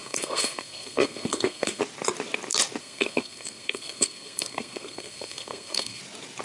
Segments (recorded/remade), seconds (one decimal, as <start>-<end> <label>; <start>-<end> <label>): 0.0-1.8 remade; 1.8-2.8 recorded; 2.8-6.0 remade; 6.0-6.4 recorded